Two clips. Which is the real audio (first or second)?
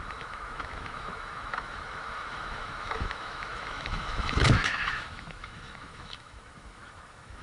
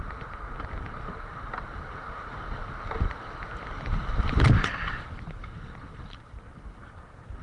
second